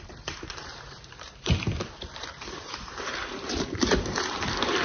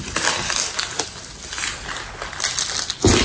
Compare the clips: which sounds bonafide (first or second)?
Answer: second